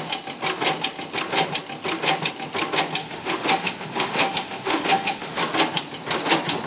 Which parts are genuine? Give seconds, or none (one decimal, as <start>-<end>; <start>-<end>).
0.0-3.0; 5.4-6.7

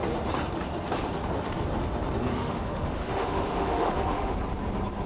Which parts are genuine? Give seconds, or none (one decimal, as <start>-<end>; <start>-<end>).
0.0-2.3; 4.3-5.1

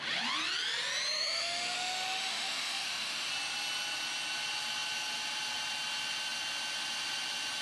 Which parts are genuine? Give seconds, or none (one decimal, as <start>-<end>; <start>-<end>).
0.0-1.1; 3.3-7.6